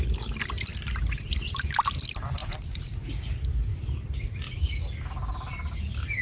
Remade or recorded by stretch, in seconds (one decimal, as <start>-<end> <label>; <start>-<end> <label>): 0.0-2.4 recorded; 2.4-3.1 remade; 3.1-3.7 recorded; 3.7-4.4 remade; 4.4-6.2 recorded